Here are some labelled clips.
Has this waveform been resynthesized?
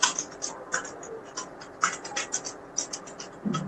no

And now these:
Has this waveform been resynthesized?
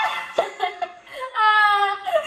yes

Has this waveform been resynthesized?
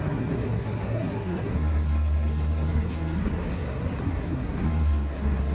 yes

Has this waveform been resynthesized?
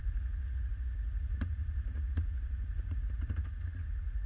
yes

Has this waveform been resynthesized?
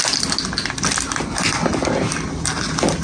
no